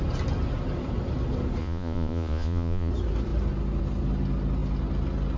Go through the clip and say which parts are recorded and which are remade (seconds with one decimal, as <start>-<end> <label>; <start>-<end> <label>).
0.0-1.6 recorded; 1.6-2.9 remade; 2.9-5.4 recorded